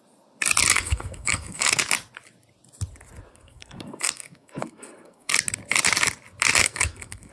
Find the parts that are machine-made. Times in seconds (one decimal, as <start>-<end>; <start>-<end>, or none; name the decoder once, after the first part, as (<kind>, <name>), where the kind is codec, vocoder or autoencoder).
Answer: 0.7-1.8 (codec, SNAC); 3.3-5.3; 6.6-7.3